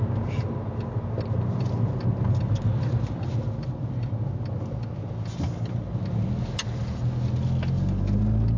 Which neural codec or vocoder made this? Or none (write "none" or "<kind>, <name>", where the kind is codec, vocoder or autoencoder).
none